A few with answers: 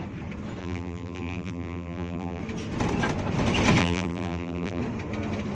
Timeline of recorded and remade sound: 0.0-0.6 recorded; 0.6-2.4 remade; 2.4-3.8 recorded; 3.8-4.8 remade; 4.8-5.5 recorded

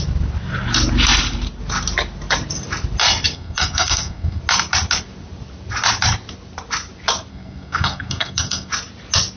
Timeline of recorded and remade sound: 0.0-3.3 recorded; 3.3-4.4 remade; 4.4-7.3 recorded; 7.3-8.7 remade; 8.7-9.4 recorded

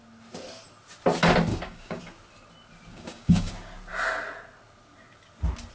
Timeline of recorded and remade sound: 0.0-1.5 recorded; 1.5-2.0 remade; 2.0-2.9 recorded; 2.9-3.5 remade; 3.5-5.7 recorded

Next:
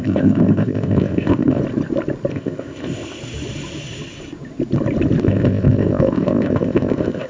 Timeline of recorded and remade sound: 0.0-1.6 remade; 1.6-2.3 recorded; 2.3-3.2 remade; 3.2-5.2 recorded; 5.2-7.3 remade

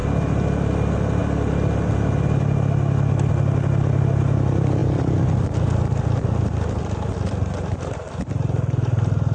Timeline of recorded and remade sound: 0.0-9.3 recorded

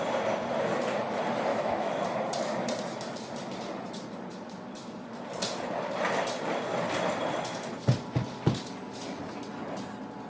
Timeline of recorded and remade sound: 0.0-1.5 recorded; 1.5-2.0 remade; 2.0-10.3 recorded

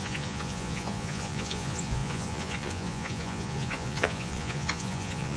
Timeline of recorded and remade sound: 0.0-5.4 remade